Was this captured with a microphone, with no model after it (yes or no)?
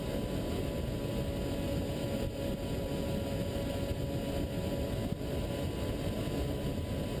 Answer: yes